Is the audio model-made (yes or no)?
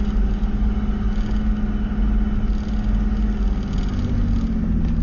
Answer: no